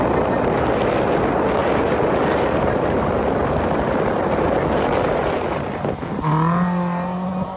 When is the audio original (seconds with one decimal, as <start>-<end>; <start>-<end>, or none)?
0.0-7.6